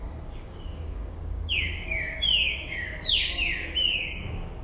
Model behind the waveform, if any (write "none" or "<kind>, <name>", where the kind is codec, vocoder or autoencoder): codec, DAC